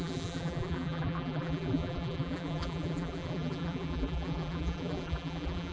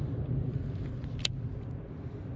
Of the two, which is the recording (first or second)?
second